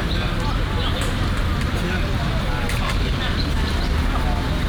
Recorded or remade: recorded